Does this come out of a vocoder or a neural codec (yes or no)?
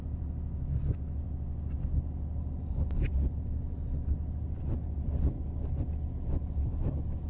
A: no